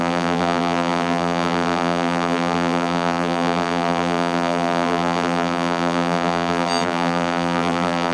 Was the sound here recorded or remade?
remade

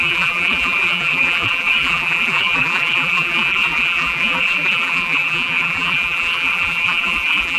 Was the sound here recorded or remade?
remade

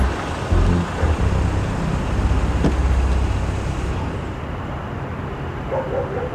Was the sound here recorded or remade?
recorded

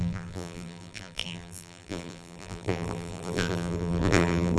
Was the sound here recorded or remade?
remade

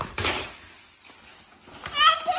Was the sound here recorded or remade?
recorded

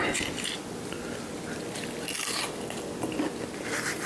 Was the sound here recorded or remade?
recorded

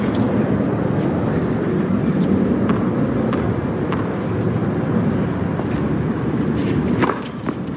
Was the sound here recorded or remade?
remade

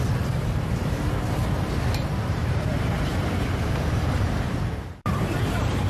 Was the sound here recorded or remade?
remade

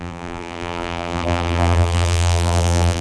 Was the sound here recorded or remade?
remade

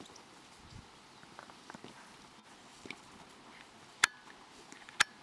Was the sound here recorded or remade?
recorded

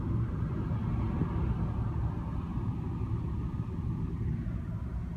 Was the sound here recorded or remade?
recorded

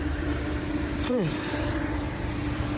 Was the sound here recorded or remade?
remade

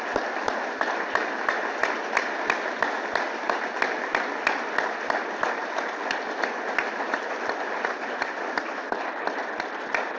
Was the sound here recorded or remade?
recorded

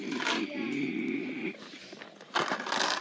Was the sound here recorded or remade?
recorded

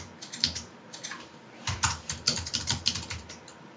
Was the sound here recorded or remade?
remade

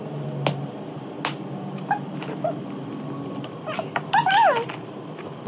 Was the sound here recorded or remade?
recorded